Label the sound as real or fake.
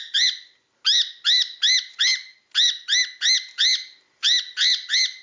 real